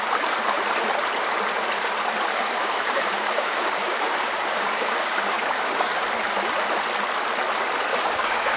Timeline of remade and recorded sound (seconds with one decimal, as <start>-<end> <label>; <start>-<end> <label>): 0.0-2.3 recorded; 2.3-6.0 remade; 6.0-7.9 recorded; 7.9-8.6 remade